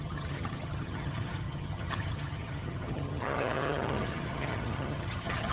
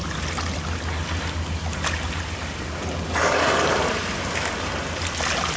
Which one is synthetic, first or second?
first